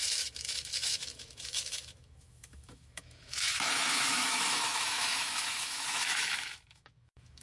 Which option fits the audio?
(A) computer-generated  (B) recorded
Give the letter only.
A